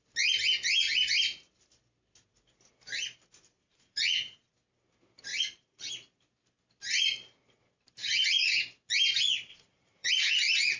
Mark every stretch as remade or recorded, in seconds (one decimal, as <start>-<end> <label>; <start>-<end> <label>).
0.0-3.6 recorded; 3.6-4.5 remade; 4.5-5.3 recorded; 5.3-5.9 remade; 5.9-9.5 recorded; 9.5-10.1 remade; 10.1-10.8 recorded